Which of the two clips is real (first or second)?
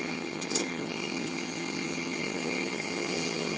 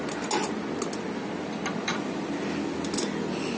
second